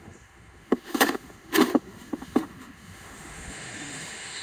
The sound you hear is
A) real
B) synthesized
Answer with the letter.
B